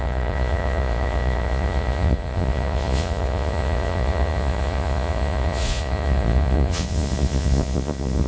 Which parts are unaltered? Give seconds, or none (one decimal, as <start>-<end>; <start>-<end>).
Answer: none